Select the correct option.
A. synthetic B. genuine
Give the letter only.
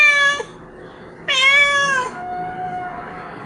A